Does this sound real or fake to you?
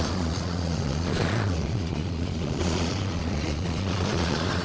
fake